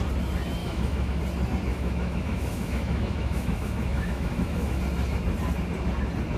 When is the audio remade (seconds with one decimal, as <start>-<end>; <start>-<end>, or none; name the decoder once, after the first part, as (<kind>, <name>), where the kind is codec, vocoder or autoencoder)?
0.6-1.2 (autoencoder, DAC-VAE); 1.7-4.8